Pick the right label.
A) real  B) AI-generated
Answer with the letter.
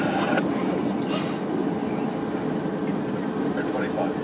A